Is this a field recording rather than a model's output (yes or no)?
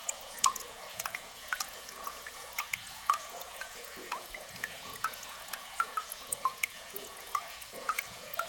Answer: no